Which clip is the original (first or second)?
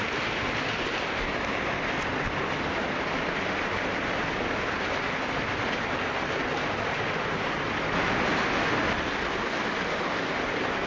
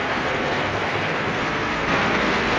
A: first